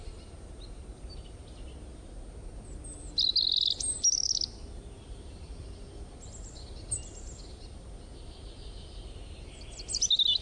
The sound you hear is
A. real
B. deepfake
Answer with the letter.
A